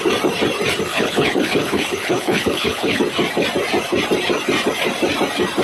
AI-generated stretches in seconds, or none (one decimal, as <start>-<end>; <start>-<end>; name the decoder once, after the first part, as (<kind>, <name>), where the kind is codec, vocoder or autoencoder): 0.9-3.0 (codec, HILCodec)